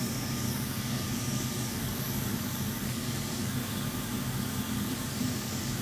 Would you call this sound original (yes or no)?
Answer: no